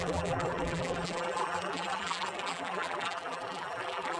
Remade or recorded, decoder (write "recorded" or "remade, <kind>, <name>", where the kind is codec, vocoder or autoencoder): remade, vocoder, BigVGAN v2